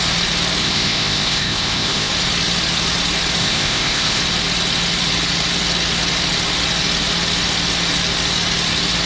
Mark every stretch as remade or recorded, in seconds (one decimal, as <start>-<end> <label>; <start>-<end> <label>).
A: 0.0-0.6 recorded; 0.6-2.1 remade; 2.1-3.4 recorded; 3.4-4.2 remade; 4.2-9.1 recorded